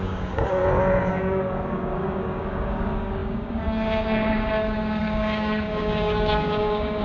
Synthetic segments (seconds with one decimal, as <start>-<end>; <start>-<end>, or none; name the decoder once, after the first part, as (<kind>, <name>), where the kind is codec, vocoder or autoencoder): 0.0-0.6 (codec, DAC); 1.1-7.0